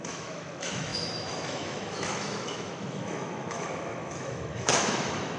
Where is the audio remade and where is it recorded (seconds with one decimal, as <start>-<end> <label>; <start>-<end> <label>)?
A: 0.0-5.4 remade

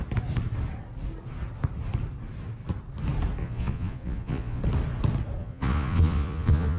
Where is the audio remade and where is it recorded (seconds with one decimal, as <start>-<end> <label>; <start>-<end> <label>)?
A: 0.0-3.4 recorded; 3.4-4.6 remade; 4.6-5.4 recorded; 5.4-6.8 remade

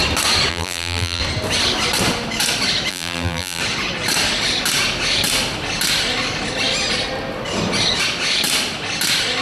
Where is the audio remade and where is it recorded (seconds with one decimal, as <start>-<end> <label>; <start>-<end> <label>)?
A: 0.0-0.5 recorded; 0.5-1.2 remade; 1.2-2.9 recorded; 2.9-3.6 remade; 3.6-9.4 recorded

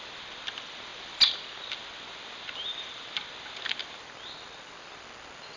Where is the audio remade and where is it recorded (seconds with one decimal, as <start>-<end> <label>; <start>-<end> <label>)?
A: 0.0-5.6 recorded

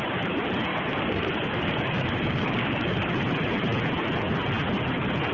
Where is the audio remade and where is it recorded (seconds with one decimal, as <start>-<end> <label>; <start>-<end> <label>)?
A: 0.0-0.7 recorded; 0.7-3.1 remade; 3.1-5.3 recorded

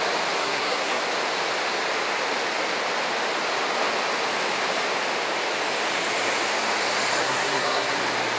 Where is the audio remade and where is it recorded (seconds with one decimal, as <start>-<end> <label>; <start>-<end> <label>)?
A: 0.0-0.4 recorded; 0.4-1.0 remade; 1.0-7.2 recorded; 7.2-8.0 remade; 8.0-8.4 recorded